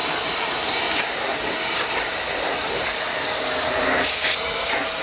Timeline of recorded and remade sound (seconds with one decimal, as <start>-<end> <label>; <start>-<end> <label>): 0.0-5.0 recorded